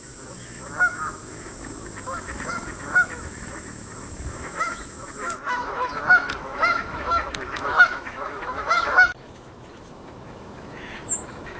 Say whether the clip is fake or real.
fake